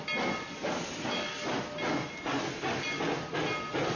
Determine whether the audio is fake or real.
real